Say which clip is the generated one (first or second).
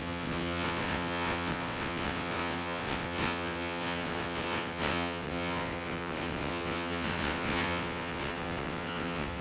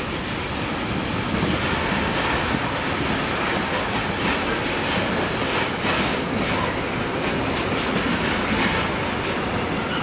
first